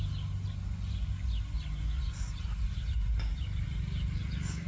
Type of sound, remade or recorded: recorded